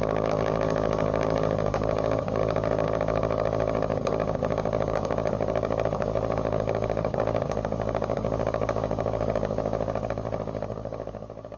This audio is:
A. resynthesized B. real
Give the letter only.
A